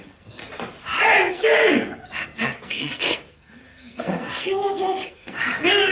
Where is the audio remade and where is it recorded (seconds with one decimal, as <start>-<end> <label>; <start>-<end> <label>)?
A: 0.0-0.4 remade; 0.4-1.3 recorded; 1.3-5.9 remade